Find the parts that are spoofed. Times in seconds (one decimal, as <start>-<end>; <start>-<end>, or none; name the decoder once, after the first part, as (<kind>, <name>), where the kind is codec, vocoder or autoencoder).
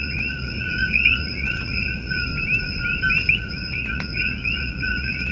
0.0-2.3 (vocoder, Vocos); 3.3-5.3